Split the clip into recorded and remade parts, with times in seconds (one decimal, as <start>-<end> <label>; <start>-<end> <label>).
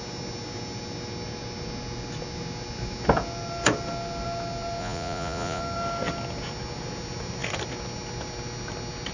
0.0-4.8 recorded; 4.8-5.6 remade; 5.6-9.1 recorded